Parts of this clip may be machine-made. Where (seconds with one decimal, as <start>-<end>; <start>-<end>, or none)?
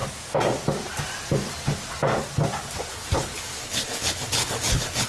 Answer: 2.9-5.1